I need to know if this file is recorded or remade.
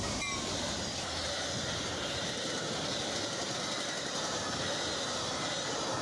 recorded